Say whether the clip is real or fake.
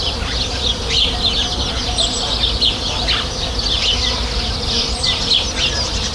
real